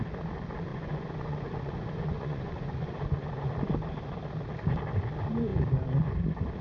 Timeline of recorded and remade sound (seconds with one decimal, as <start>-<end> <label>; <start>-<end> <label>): 0.0-0.7 recorded; 0.7-3.5 remade; 3.5-6.6 recorded